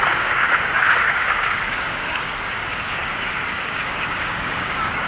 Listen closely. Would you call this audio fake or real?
fake